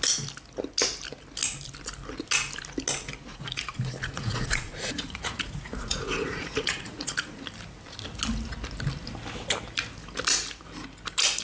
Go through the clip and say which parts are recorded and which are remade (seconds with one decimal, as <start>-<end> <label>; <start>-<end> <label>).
0.0-3.3 recorded; 3.3-7.4 remade; 7.4-11.4 recorded